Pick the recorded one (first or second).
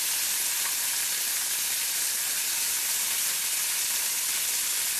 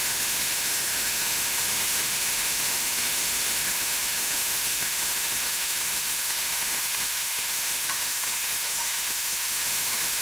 first